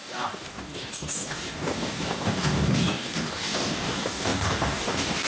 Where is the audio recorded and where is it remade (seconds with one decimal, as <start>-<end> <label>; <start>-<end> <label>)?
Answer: 0.0-5.3 remade